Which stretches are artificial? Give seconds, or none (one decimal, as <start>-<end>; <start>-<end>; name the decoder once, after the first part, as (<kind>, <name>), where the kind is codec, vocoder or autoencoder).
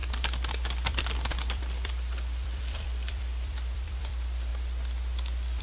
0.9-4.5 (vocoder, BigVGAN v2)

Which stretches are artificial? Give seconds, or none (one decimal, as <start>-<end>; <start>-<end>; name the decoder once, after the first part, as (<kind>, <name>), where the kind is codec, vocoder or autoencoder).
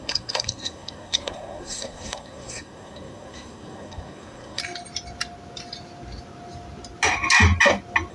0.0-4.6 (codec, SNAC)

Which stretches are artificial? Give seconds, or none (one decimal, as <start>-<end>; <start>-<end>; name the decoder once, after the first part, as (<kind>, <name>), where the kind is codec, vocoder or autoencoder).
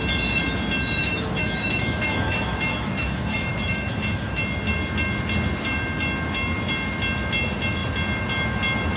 1.0-4.4 (autoencoder, DAC-VAE)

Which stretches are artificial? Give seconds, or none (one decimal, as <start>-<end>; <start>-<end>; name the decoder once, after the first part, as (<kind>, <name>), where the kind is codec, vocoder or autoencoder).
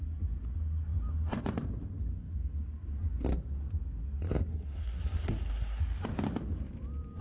4.5-5.8 (codec, SNAC)